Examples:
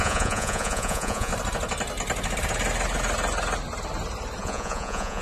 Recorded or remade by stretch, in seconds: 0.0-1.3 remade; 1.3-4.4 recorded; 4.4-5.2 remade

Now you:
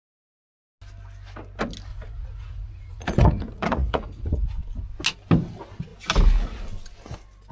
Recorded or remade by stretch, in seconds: 0.0-1.9 recorded; 1.9-4.6 remade; 4.6-7.5 recorded

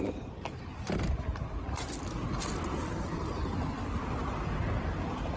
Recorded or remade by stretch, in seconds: 0.0-5.4 recorded

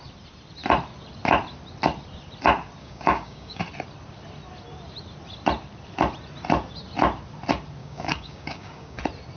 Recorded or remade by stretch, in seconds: 0.0-2.8 recorded; 2.8-3.6 remade; 3.6-7.8 recorded; 7.8-9.0 remade; 9.0-9.4 recorded

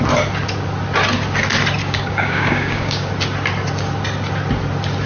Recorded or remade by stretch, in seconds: 0.0-1.8 recorded; 1.8-3.1 remade; 3.1-5.1 recorded

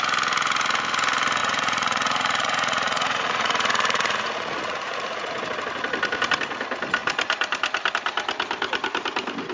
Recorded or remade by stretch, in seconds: 0.0-1.4 recorded; 1.4-5.3 remade; 5.3-9.5 recorded

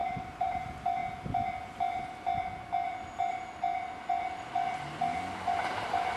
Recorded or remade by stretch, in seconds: 0.0-0.6 remade; 0.6-6.2 recorded

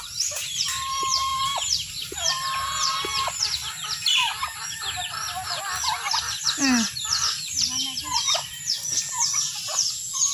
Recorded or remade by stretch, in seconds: 0.0-10.3 recorded